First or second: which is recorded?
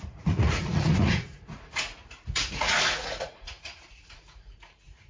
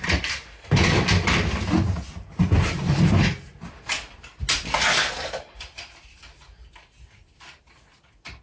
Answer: second